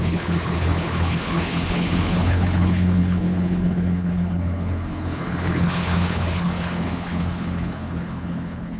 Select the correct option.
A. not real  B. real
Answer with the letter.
A